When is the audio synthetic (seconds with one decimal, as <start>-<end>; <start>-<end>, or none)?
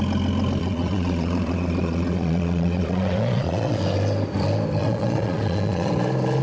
0.6-3.8; 4.8-5.9